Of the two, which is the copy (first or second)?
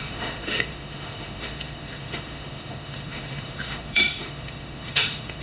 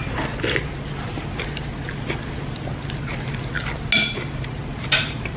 first